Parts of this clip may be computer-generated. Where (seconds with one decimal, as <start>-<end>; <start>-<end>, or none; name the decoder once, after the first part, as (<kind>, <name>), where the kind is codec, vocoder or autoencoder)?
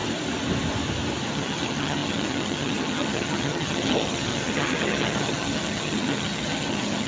1.3-7.1 (vocoder, HiFi-GAN)